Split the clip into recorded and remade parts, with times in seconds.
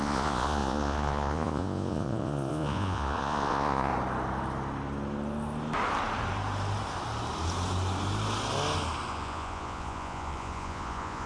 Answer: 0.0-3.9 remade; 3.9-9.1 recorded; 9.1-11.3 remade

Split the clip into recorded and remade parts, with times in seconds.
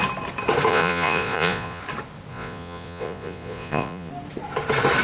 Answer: 0.0-0.7 recorded; 0.7-1.8 remade; 1.8-2.3 recorded; 2.3-4.1 remade; 4.1-5.0 recorded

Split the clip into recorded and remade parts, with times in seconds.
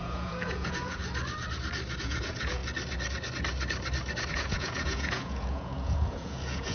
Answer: 0.0-1.0 remade; 1.0-2.0 recorded; 2.0-2.6 remade; 2.6-4.3 recorded; 4.3-6.7 remade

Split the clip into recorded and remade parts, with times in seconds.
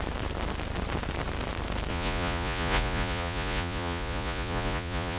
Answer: 0.0-1.9 recorded; 1.9-5.2 remade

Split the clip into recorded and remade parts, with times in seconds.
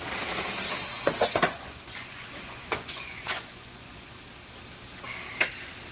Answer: 0.0-0.8 recorded; 0.8-4.2 remade; 4.2-5.9 recorded